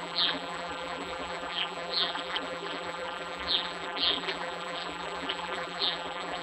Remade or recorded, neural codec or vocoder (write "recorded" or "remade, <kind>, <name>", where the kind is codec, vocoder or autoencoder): remade, vocoder, BigVGAN v2